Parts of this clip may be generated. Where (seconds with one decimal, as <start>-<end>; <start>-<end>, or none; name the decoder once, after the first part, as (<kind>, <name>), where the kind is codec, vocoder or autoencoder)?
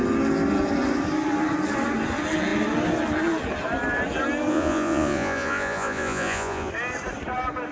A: 4.5-6.7 (vocoder, Vocos)